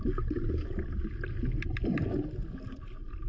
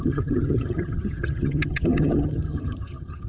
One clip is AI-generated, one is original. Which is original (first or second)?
first